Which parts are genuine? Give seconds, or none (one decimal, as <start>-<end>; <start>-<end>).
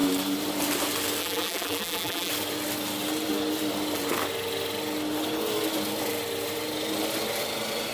0.0-1.2; 2.3-7.9